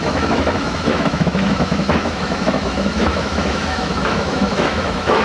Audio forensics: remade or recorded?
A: remade